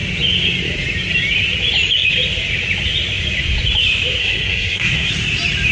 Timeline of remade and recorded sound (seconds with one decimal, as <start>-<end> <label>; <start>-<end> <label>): 0.0-4.2 recorded; 4.2-5.1 remade; 5.1-5.7 recorded